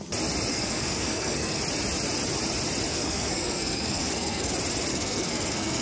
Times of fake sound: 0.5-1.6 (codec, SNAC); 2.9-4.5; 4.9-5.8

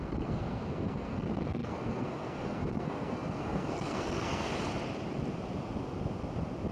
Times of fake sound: 0.0-4.5 (codec, SNAC)

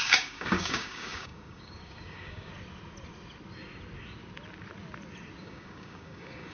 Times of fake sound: 0.0-2.5 (codec, DAC); 5.4-6.5

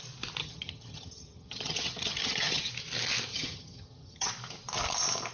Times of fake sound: 0.4-2.7 (vocoder, HiFi-GAN); 3.3-4.3

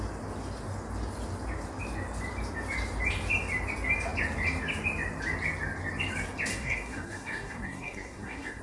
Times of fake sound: 6.5-8.6 (codec, SNAC)

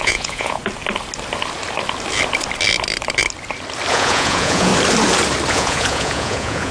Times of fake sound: 0.0-0.6 (vocoder, Vocos); 3.9-4.7; 5.5-6.7

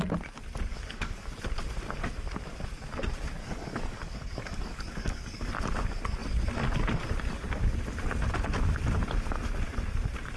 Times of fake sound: 0.7-1.3 (codec, DAC); 3.4-5.5

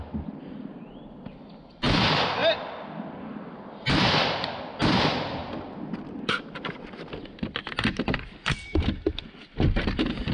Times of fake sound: 0.0-5.4 (vocoder, BigVGAN v2); 6.0-10.3